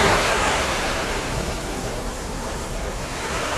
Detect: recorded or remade remade